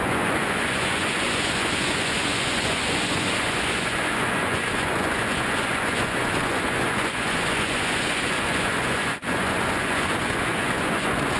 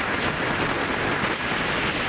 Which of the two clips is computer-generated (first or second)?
first